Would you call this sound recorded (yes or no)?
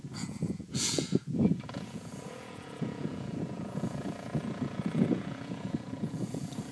no